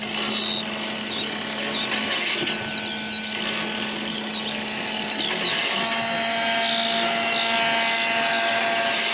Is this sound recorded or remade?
recorded